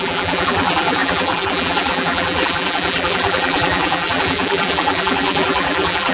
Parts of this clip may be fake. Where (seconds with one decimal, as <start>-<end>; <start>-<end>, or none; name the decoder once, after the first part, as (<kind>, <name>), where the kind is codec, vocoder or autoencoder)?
0.0-6.1 (vocoder, BigVGAN v2)